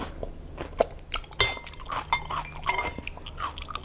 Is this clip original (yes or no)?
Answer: yes